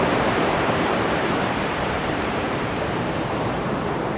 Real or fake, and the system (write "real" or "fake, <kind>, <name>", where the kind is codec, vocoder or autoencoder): fake, vocoder, BigVGAN v2